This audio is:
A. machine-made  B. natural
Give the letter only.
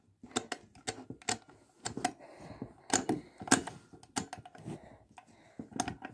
B